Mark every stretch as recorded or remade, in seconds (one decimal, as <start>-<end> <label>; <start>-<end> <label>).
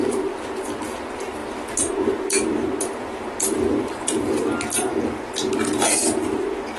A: 0.0-6.8 recorded